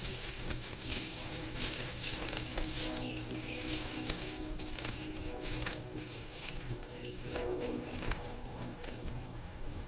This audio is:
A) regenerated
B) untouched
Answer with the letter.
A